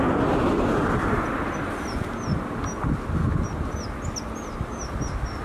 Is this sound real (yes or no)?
yes